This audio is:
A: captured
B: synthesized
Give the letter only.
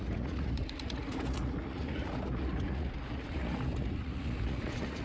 B